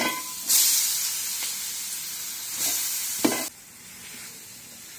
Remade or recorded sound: recorded